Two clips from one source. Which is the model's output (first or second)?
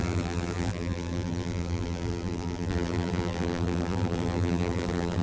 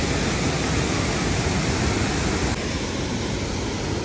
first